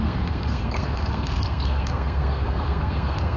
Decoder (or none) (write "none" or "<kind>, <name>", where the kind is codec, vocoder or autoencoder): codec, SNAC